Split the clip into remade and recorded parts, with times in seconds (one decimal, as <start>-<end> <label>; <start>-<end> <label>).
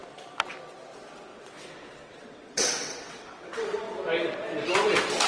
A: 0.0-1.3 recorded; 1.3-3.8 remade; 3.8-5.3 recorded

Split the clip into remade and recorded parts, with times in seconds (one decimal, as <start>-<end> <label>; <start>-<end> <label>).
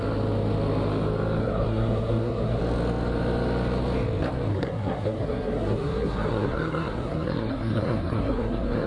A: 0.0-1.4 recorded; 1.4-2.6 remade; 2.6-4.5 recorded; 4.5-8.9 remade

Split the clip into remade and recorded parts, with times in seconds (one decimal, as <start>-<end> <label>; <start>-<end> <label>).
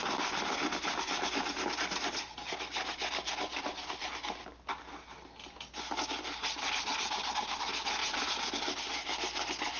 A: 0.0-8.0 recorded; 8.0-8.6 remade; 8.6-9.8 recorded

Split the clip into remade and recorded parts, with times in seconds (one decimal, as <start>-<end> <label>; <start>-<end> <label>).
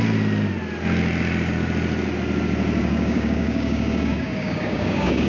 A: 0.0-2.8 recorded; 2.8-5.3 remade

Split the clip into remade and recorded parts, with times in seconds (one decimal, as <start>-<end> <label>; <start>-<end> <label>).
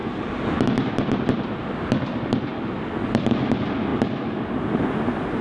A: 0.0-5.4 recorded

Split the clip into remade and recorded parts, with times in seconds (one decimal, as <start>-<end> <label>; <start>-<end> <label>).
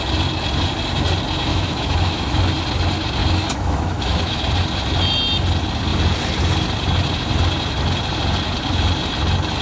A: 0.0-1.5 recorded; 1.5-2.4 remade; 2.4-3.2 recorded; 3.2-4.4 remade; 4.4-9.6 recorded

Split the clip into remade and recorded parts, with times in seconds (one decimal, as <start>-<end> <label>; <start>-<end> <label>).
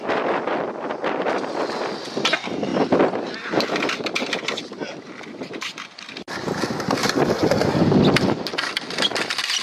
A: 0.0-9.6 recorded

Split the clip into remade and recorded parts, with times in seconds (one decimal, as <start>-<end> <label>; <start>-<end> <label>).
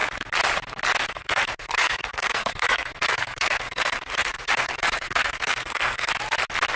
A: 0.0-1.1 recorded; 1.1-6.1 remade; 6.1-6.8 recorded